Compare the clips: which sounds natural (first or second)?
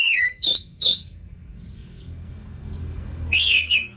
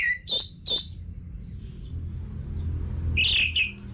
second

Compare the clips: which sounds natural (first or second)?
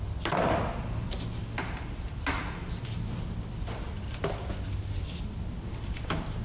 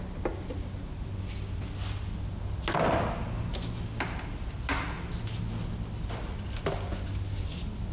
second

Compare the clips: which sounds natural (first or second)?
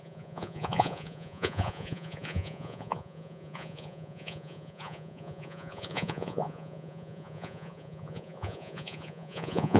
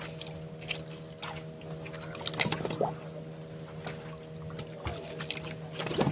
second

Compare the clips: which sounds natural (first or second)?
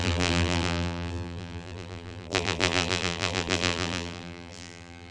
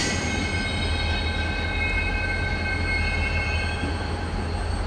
second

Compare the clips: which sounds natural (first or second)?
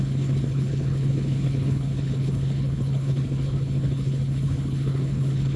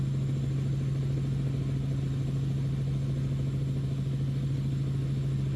second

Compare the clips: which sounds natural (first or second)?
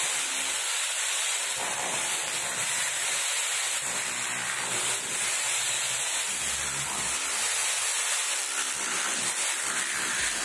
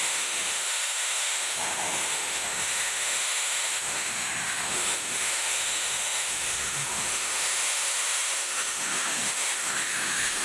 first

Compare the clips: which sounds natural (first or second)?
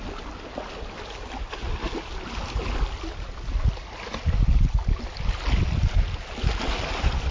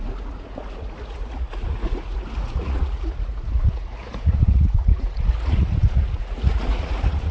first